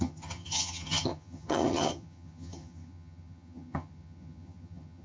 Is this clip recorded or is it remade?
remade